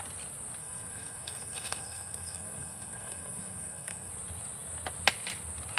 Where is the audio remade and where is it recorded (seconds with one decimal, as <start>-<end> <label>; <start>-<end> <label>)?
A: 0.0-0.6 recorded; 0.6-4.1 remade; 4.1-5.8 recorded